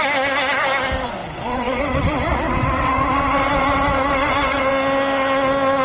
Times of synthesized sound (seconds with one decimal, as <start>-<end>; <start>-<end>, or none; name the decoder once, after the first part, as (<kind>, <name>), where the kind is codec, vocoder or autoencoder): 1.2-4.7 (vocoder, WaveNeXt)